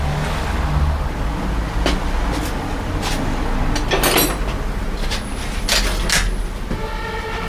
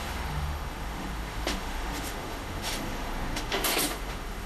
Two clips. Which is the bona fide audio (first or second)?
first